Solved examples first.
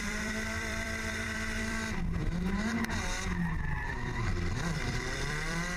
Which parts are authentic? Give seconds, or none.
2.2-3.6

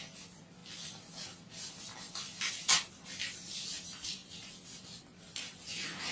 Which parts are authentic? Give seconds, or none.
0.0-6.1